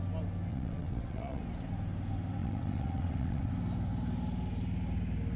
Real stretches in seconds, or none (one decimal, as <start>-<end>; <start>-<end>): 0.0-0.5; 1.4-2.4; 3.5-5.4

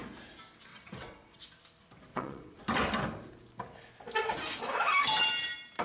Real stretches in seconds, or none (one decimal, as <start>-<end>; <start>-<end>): 0.0-0.7; 1.5-2.1; 2.6-5.8

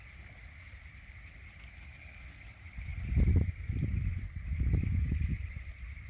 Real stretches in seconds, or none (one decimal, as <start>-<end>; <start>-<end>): 0.0-6.1

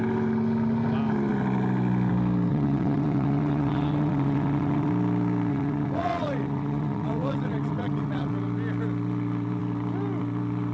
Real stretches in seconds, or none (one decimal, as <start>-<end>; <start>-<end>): 0.0-2.5; 4.9-5.5; 8.3-10.7

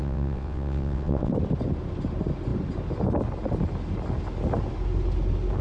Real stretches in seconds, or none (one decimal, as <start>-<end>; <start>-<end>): 1.3-5.6

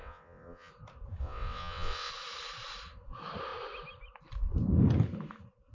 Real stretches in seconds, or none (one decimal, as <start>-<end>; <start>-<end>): 0.7-1.2; 2.1-5.7

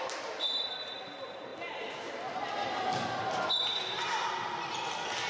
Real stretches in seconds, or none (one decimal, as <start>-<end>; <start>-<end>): 0.0-5.3